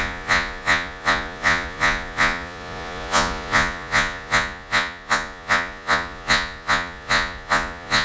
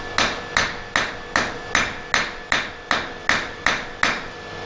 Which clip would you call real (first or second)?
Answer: second